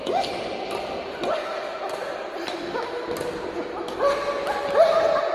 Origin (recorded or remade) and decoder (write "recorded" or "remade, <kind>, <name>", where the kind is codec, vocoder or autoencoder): recorded